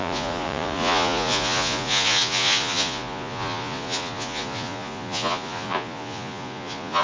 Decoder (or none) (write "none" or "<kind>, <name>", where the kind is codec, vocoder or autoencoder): vocoder, Vocos